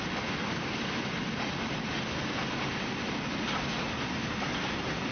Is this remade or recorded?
recorded